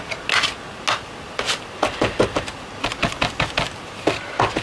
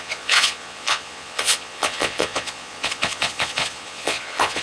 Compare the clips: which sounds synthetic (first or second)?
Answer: second